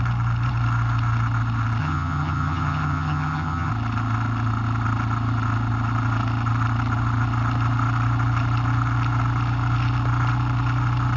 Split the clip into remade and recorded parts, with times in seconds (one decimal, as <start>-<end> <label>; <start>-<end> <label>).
0.0-1.8 recorded; 1.8-3.7 remade; 3.7-11.2 recorded